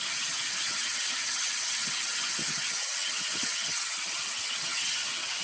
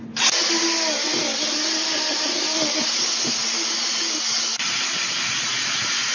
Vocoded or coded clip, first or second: first